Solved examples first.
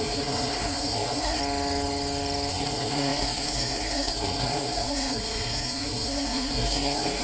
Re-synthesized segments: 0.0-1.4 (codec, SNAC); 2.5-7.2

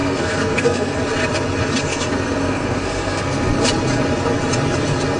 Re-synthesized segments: 0.0-1.0 (codec, SNAC); 1.9-3.6

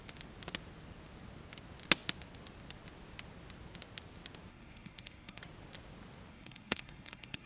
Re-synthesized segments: 4.5-5.4 (codec, SNAC); 6.3-7.5

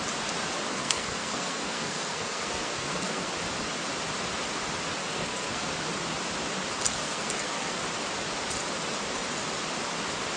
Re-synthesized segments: 0.7-3.3 (codec, SNAC); 5.0-5.7; 6.9-7.8